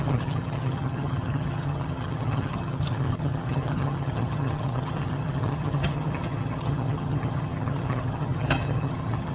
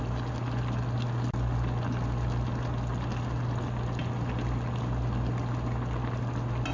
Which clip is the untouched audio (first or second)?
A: second